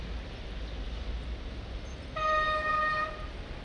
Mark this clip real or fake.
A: real